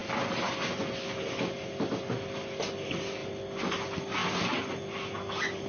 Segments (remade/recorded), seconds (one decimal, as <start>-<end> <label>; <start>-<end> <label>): 0.0-5.7 recorded